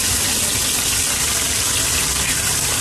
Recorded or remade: recorded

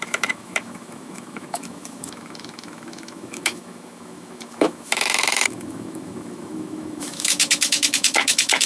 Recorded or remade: remade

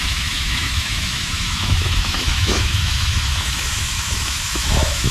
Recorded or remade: remade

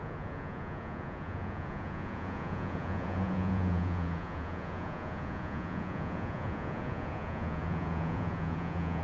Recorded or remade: remade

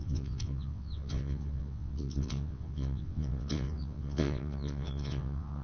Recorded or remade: remade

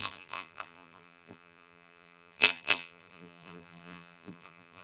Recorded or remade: remade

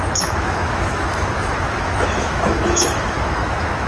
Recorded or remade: remade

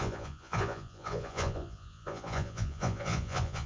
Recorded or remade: remade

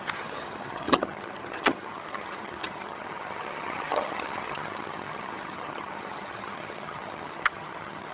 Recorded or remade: remade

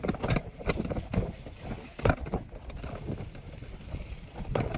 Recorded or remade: recorded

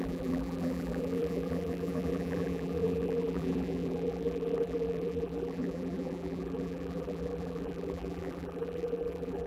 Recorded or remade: remade